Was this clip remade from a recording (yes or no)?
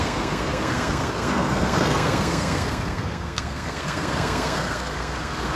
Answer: yes